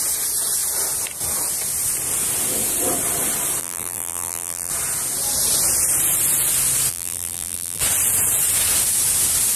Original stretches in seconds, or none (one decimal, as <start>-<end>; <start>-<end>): 0.0-3.6; 4.7-6.9; 7.8-9.6